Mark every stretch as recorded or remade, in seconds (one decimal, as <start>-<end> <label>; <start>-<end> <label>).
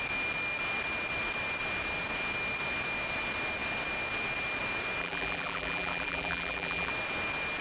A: 0.0-5.0 recorded; 5.0-6.9 remade; 6.9-7.6 recorded